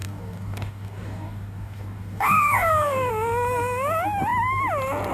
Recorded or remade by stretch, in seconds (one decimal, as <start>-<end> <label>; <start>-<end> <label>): 0.0-3.1 remade; 3.1-5.1 recorded